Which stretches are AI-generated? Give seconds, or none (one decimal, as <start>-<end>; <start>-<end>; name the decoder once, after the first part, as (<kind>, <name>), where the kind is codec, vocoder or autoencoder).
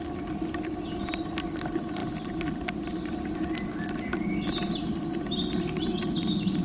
none